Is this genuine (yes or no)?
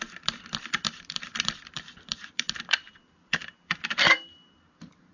no